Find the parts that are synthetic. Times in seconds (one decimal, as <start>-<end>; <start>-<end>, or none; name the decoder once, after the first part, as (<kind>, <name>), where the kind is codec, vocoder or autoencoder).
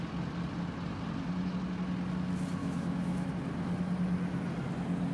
2.6-3.3 (autoencoder, DAC-VAE)